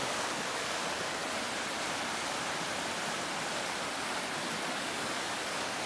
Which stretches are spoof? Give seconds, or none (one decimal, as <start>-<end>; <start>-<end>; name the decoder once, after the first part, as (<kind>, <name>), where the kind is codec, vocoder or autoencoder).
0.0-1.2 (codec, DAC); 4.7-5.9